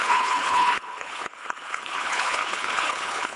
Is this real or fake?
fake